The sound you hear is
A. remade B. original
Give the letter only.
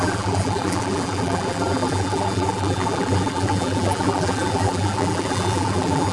A